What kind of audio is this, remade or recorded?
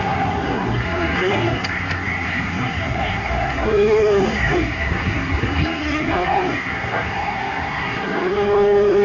remade